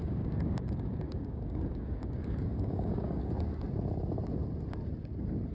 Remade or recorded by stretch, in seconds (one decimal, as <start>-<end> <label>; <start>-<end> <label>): 0.0-3.3 remade; 3.3-5.5 recorded